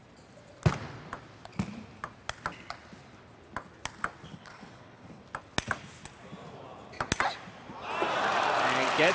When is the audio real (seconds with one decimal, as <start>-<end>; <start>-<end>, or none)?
0.0-4.3; 5.2-9.1